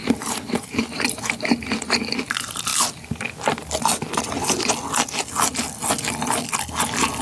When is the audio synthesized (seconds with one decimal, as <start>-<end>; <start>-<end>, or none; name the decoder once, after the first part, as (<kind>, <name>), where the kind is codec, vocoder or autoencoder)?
0.0-1.2 (vocoder, BigVGAN v2)